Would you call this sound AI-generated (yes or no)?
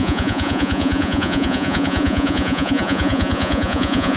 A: yes